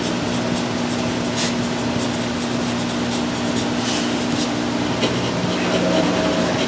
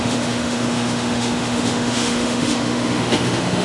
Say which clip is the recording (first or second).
first